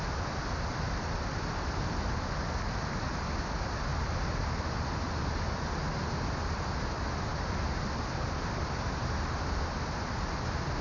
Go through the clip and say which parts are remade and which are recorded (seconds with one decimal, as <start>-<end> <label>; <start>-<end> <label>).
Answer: 0.0-10.8 recorded